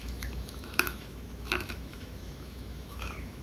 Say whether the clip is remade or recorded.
remade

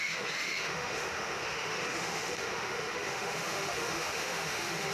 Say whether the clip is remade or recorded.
remade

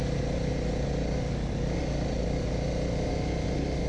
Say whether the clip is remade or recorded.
recorded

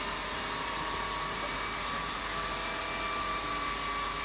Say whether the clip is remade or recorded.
recorded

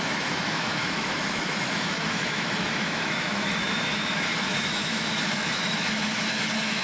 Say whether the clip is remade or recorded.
remade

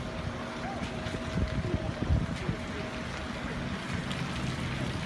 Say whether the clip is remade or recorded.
recorded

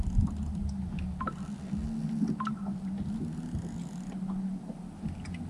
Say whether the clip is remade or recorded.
recorded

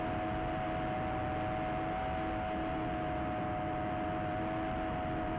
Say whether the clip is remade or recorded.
recorded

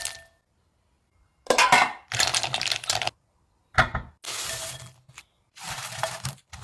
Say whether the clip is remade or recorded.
recorded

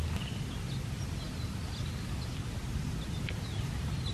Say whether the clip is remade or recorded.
recorded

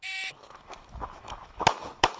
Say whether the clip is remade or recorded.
remade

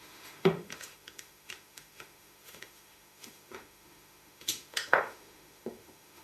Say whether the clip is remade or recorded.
remade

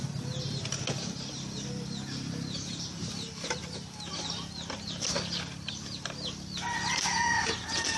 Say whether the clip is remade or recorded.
recorded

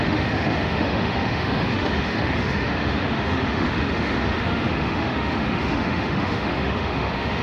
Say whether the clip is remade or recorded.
remade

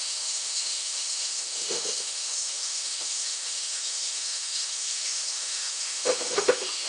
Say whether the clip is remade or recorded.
remade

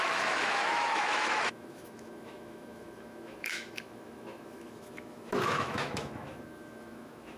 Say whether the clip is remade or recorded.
remade